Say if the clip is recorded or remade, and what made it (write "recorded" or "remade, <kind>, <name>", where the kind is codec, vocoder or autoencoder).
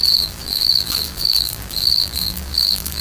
remade, vocoder, BigVGAN v2